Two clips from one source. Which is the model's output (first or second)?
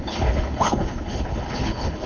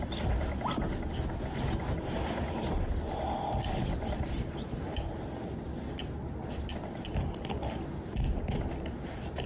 first